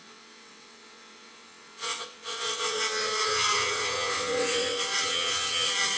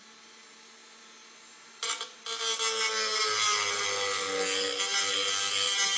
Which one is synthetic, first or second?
first